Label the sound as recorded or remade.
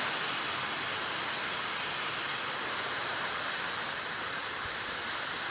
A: recorded